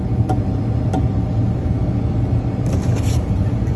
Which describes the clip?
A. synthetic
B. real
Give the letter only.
B